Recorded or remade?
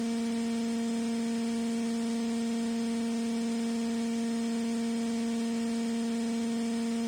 recorded